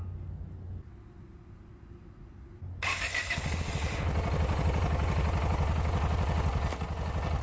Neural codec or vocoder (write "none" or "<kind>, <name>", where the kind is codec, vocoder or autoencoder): none